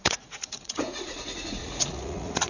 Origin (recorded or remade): remade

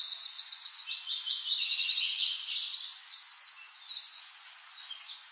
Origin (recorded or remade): remade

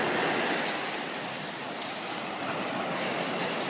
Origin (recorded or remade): recorded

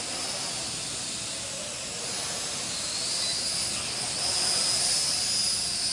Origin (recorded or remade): recorded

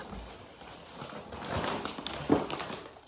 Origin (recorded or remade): recorded